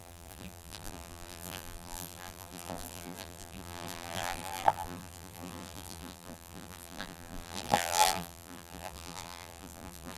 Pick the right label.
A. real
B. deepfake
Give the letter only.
B